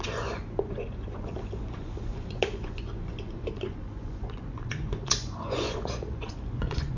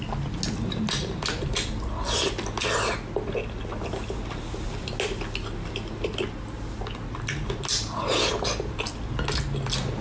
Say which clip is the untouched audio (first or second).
second